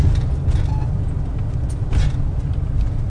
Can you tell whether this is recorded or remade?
recorded